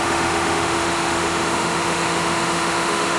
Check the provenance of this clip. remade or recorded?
remade